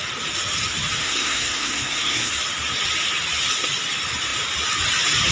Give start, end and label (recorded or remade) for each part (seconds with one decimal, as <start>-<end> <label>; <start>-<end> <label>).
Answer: 0.0-1.0 recorded; 1.0-2.3 remade; 2.3-5.3 recorded